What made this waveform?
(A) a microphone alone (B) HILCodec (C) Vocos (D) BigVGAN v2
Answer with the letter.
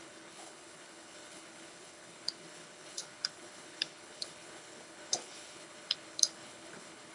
B